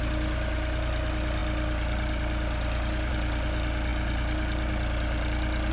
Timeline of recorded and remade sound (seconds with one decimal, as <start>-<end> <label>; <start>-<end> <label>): 0.0-5.7 recorded